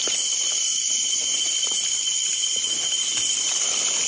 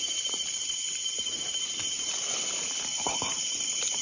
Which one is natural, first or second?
first